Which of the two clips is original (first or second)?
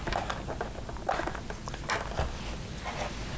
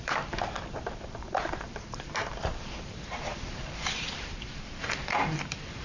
first